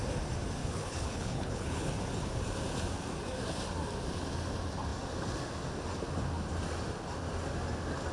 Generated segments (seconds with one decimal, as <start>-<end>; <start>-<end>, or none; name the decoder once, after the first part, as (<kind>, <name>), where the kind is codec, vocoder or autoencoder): 0.6-1.9 (codec, HILCodec)